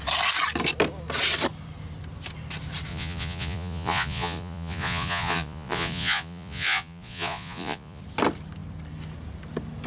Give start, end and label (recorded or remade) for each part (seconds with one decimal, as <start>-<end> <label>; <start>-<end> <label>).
0.0-2.9 recorded; 2.9-8.0 remade; 8.0-9.9 recorded